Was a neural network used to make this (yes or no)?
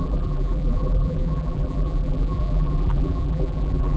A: yes